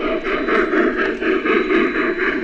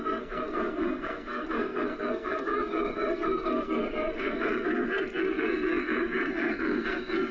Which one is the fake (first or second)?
second